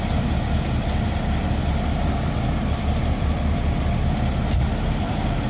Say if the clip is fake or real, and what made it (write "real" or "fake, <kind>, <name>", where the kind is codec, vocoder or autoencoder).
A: real